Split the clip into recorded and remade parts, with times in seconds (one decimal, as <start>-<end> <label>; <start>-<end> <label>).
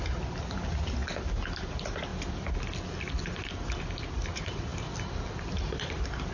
0.0-6.3 recorded